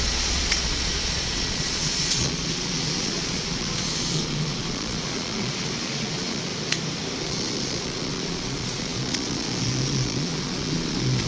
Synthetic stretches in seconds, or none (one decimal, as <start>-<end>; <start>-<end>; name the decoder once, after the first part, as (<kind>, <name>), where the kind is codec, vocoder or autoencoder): 0.0-6.5 (vocoder, Vocos); 7.2-11.3